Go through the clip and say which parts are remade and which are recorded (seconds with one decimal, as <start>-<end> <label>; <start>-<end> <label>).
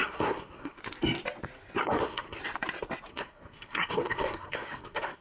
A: 0.0-0.8 remade; 0.8-1.8 recorded; 1.8-2.4 remade; 2.4-3.1 recorded; 3.1-5.2 remade